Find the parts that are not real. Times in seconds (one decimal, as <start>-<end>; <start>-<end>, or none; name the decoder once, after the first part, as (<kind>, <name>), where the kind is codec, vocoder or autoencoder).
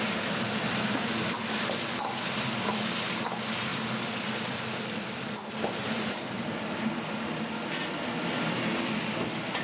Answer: 3.7-7.3 (vocoder, BigVGAN v2)